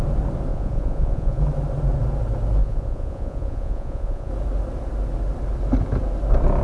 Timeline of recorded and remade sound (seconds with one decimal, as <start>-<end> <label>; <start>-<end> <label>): 0.0-0.5 recorded; 0.5-1.4 remade; 1.4-2.6 recorded; 2.6-4.3 remade; 4.3-6.6 recorded

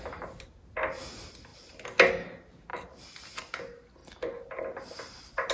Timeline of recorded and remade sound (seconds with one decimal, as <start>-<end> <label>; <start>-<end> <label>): 0.0-5.5 recorded